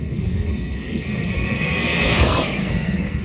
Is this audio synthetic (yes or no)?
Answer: yes